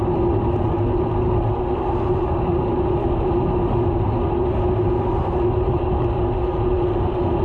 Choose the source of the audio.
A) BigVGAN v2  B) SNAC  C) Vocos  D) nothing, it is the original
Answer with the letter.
D